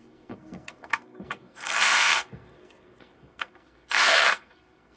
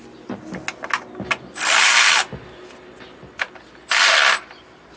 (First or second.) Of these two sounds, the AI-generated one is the first